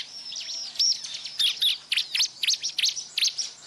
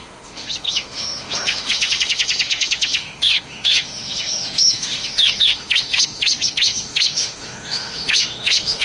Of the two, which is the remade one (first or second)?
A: second